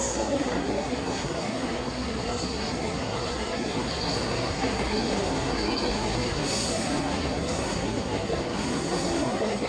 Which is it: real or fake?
fake